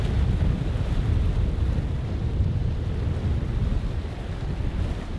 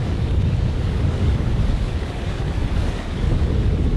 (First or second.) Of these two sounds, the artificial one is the second